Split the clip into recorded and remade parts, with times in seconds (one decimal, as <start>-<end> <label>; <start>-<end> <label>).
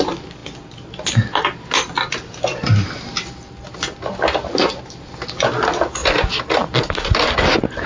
0.0-7.9 recorded